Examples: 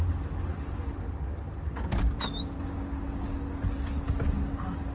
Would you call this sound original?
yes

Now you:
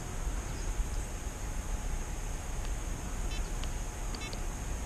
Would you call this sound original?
yes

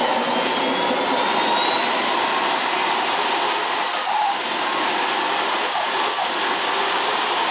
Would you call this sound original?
yes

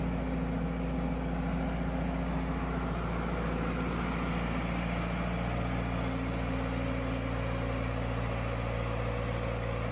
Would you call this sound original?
yes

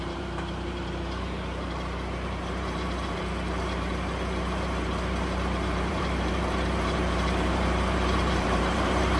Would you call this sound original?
no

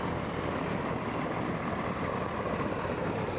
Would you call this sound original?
no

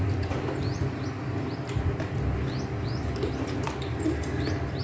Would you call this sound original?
no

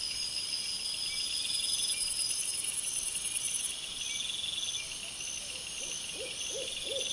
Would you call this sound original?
yes